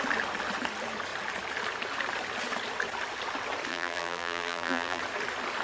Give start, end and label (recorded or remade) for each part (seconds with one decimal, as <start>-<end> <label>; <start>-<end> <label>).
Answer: 0.0-3.7 recorded; 3.7-5.0 remade; 5.0-5.6 recorded